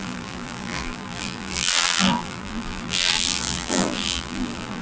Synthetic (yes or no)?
yes